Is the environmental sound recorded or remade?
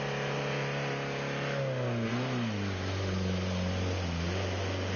recorded